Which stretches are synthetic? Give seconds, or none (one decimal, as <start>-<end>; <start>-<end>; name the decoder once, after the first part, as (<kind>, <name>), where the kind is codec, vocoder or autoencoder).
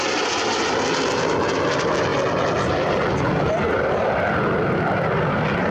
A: none